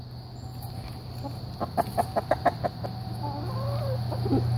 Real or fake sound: real